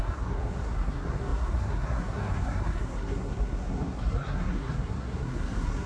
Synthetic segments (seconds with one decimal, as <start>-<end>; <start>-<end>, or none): 0.0-5.9